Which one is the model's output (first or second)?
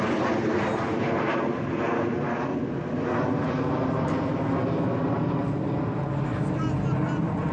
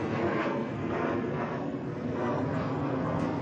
second